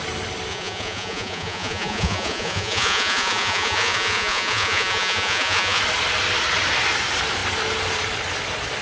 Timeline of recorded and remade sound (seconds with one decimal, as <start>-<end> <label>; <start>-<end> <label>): 0.0-0.5 recorded; 0.5-5.8 remade; 5.8-8.8 recorded